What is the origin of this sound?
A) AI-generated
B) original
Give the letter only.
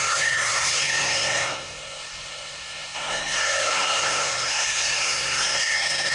A